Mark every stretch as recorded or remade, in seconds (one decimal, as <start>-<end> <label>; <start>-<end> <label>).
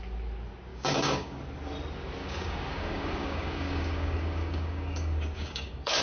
0.0-0.7 recorded; 0.7-1.4 remade; 1.4-2.2 recorded; 2.2-6.0 remade